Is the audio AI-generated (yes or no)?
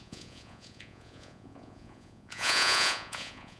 yes